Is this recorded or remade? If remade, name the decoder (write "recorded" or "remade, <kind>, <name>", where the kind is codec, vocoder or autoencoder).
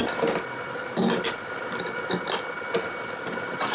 recorded